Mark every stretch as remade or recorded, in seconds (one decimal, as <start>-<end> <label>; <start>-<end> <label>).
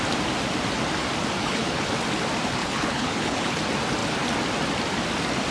0.0-1.4 recorded; 1.4-1.9 remade; 1.9-2.6 recorded; 2.6-3.6 remade; 3.6-5.5 recorded